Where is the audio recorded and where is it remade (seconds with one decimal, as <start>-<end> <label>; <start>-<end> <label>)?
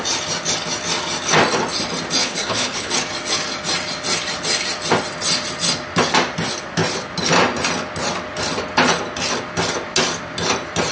0.0-2.2 recorded; 2.2-2.9 remade; 2.9-10.9 recorded